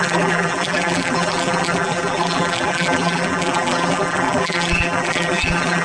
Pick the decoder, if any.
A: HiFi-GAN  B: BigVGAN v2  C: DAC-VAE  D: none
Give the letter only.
B